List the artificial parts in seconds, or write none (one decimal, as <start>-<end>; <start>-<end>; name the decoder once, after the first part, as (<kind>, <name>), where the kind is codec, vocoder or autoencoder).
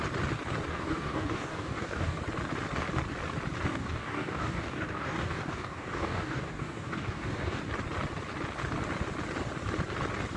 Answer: 0.7-2.2 (codec, DAC); 3.7-7.6